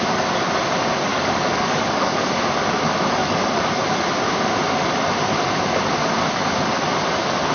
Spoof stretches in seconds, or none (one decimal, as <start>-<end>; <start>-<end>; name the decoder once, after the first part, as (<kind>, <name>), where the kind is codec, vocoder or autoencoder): 1.1-2.3 (codec, DAC); 3.2-3.8